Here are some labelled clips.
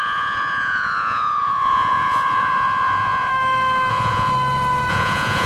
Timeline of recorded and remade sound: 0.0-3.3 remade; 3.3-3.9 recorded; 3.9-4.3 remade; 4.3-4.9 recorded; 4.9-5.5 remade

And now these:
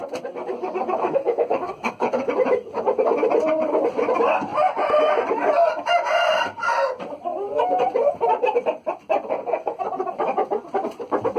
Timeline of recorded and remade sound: 0.0-1.0 recorded; 1.0-2.3 remade; 2.3-9.3 recorded; 9.3-9.8 remade; 9.8-11.4 recorded

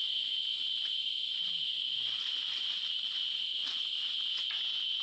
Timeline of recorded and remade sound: 0.0-2.2 remade; 2.2-3.6 recorded; 3.6-4.6 remade; 4.6-5.0 recorded